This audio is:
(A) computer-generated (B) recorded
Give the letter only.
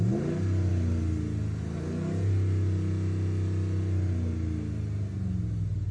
B